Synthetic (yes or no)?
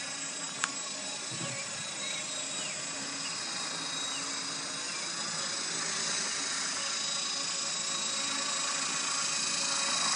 no